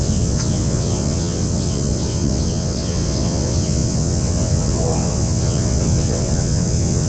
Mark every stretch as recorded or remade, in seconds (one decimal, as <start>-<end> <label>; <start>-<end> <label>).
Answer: 0.0-7.1 remade